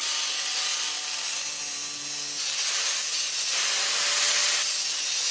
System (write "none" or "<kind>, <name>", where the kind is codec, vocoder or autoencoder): none